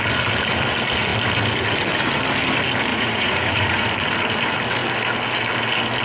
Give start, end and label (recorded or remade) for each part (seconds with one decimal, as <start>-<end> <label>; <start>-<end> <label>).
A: 0.0-2.9 recorded; 2.9-3.9 remade; 3.9-6.0 recorded

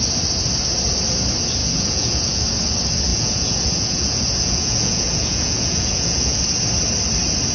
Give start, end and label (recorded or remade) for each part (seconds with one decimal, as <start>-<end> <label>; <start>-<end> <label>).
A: 0.0-1.6 recorded; 1.6-2.4 remade; 2.4-3.1 recorded; 3.1-6.4 remade; 6.4-7.5 recorded

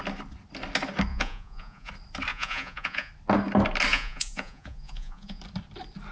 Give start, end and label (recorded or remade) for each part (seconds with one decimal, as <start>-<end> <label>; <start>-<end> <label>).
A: 0.0-1.1 recorded; 1.1-1.9 remade; 1.9-2.3 recorded; 2.3-3.1 remade; 3.1-3.9 recorded; 3.9-5.4 remade; 5.4-6.1 recorded

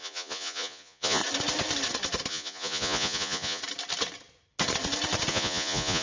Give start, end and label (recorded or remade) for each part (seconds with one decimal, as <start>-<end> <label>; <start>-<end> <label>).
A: 0.0-1.2 remade; 1.2-2.3 recorded; 2.3-3.6 remade; 3.6-5.3 recorded; 5.3-6.0 remade

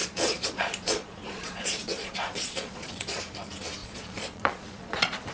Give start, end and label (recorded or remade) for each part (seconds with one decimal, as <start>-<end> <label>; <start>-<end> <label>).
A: 0.0-3.2 remade; 3.2-3.8 recorded; 3.8-5.3 remade

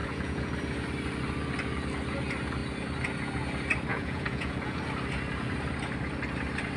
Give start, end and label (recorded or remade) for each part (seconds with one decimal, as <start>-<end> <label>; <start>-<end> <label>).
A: 0.0-0.5 remade; 0.5-3.9 recorded; 3.9-4.8 remade; 4.8-6.8 recorded